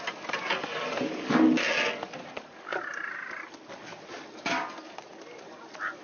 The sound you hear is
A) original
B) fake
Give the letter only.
A